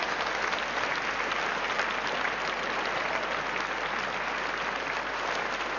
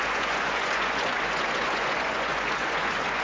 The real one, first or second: first